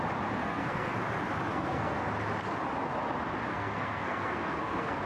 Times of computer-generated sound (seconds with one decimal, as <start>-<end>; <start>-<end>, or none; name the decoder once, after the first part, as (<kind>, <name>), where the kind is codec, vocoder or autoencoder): 0.4-0.9 (codec, SNAC); 1.5-2.1; 3.5-5.1